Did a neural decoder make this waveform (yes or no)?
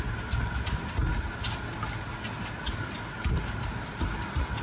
no